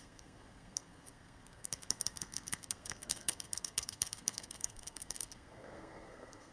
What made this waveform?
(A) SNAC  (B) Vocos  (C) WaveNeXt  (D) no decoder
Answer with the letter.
A